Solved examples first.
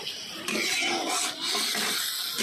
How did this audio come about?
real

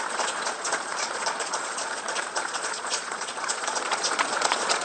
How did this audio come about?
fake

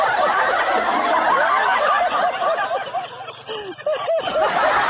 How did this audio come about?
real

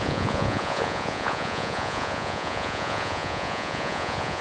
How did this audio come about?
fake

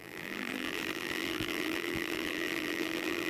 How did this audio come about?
fake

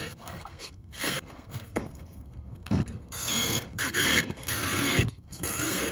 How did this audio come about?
fake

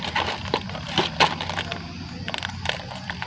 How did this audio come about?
real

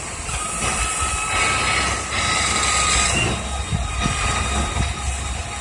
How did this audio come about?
real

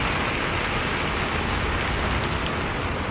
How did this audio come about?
real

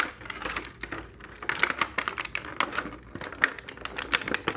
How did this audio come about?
real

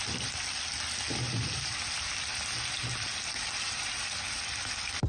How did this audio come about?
real